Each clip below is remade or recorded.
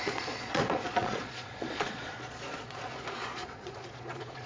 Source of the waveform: remade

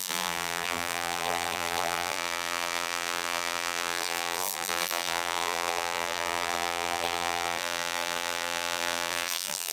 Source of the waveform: remade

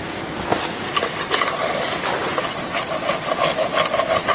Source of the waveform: recorded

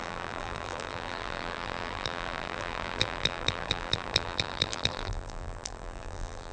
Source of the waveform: remade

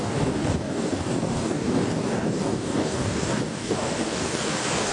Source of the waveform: remade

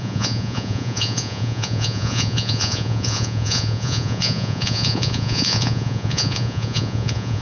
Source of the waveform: remade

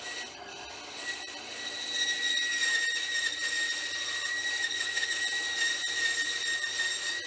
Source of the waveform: recorded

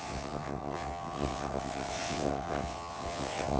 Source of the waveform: remade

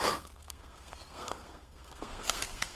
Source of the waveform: remade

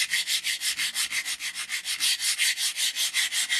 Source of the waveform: recorded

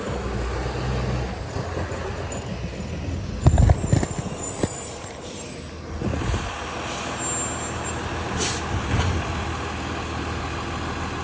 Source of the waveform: recorded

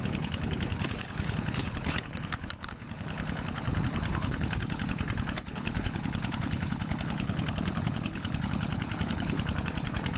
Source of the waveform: remade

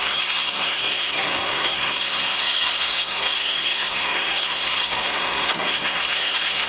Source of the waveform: remade